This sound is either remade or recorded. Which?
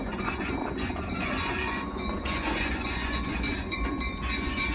remade